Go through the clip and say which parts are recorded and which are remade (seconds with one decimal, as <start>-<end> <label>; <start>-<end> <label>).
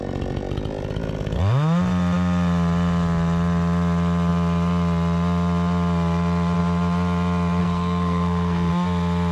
0.0-7.6 recorded; 7.6-8.7 remade; 8.7-9.3 recorded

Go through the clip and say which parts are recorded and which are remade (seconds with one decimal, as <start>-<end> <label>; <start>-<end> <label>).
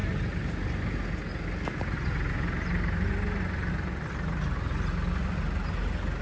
0.0-6.2 recorded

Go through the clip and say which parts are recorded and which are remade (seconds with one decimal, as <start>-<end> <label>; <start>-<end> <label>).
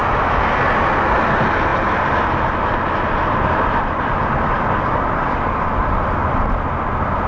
0.0-7.3 recorded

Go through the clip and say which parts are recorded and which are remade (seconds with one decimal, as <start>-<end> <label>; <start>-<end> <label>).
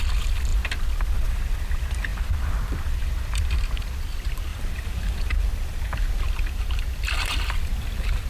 0.0-4.5 recorded; 4.5-6.3 remade; 6.3-8.3 recorded